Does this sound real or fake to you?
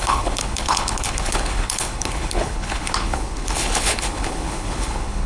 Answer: fake